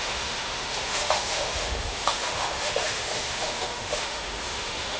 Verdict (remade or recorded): remade